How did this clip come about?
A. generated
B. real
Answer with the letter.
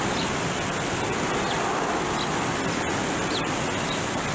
B